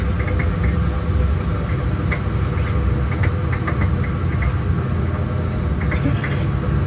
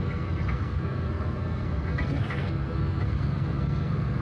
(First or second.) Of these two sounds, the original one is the first